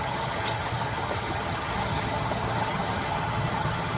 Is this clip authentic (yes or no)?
no